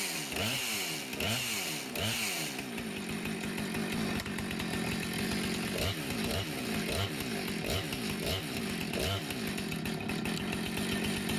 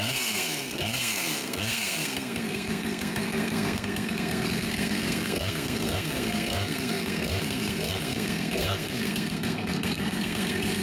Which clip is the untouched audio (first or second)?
first